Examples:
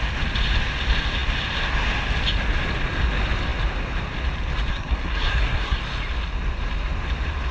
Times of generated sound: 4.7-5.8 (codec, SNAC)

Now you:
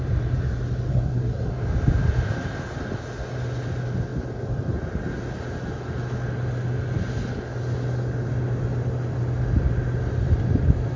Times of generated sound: 0.9-1.5 (codec, SNAC)

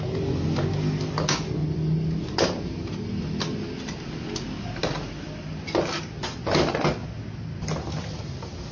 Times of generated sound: none

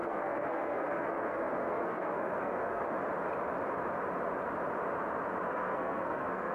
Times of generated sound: 0.0-2.8 (codec, SNAC); 5.5-6.5

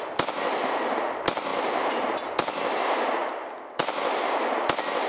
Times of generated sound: none

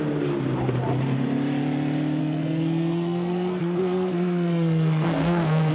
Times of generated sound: 2.2-5.7 (codec, SNAC)

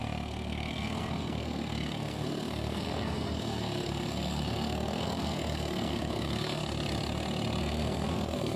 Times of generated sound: 0.0-6.6 (codec, SNAC); 7.6-8.6

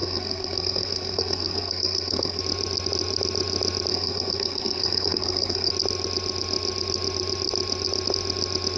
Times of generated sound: 0.0-2.4 (codec, SNAC); 3.9-5.7